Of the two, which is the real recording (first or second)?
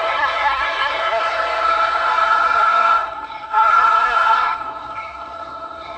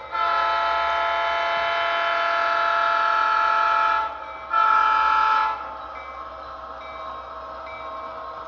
second